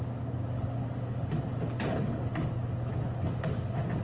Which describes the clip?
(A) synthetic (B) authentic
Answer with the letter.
B